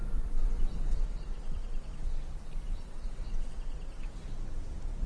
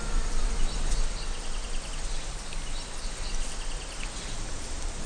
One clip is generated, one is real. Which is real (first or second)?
second